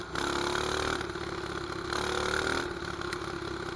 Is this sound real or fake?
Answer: real